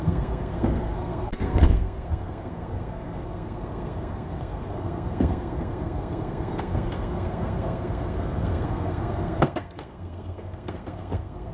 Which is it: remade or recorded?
remade